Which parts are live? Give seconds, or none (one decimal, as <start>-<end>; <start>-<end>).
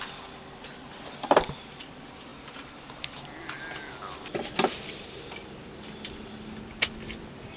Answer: 0.0-7.6